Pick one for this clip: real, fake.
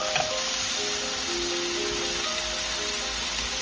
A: real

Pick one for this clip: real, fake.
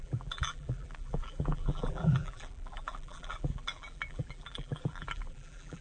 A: fake